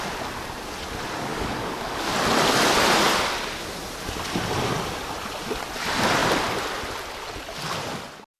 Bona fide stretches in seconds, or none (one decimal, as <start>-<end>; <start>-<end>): 0.0-1.3; 2.1-8.4